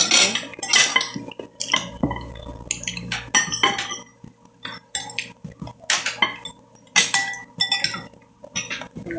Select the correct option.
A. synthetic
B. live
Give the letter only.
B